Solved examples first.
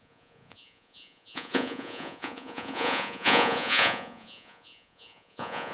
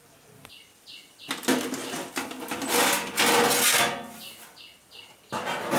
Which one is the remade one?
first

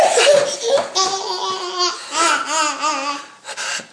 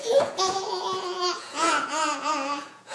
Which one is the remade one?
second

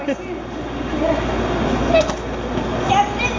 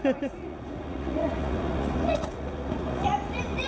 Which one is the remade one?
second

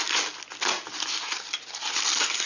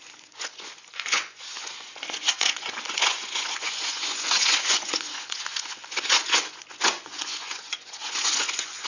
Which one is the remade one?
second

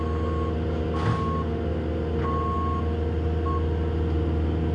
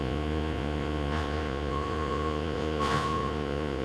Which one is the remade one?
second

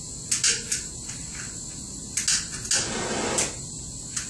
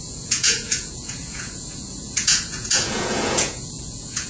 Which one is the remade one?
second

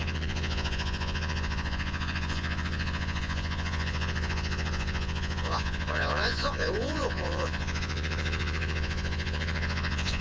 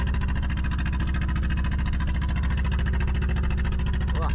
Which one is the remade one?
first